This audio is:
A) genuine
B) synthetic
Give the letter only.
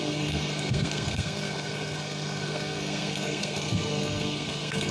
B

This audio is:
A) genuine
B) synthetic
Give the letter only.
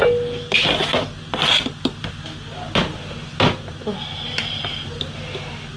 A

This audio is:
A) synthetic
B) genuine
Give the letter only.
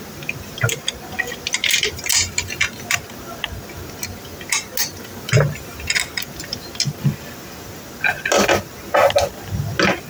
B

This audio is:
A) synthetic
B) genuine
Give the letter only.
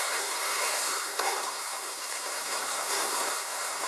A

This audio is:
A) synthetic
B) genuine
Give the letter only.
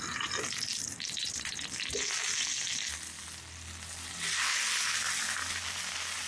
B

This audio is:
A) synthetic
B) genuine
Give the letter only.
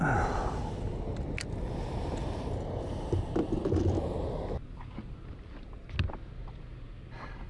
B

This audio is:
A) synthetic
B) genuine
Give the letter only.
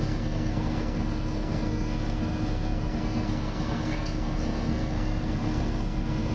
A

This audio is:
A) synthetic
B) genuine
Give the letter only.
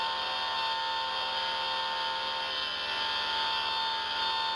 B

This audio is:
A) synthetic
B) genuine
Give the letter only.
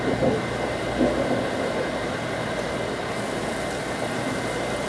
B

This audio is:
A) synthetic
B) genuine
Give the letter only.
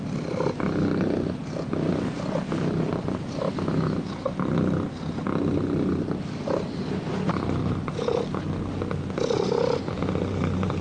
B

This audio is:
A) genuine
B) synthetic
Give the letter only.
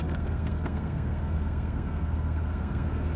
B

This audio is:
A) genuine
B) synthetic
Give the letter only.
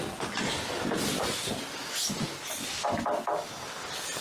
A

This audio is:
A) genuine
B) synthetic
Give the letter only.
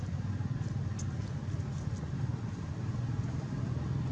A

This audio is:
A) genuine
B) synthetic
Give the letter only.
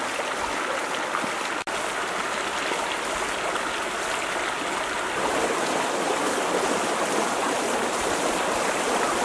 A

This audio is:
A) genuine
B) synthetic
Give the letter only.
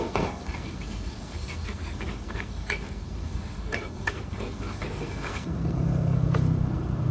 B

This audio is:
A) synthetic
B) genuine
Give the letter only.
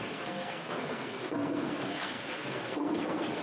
A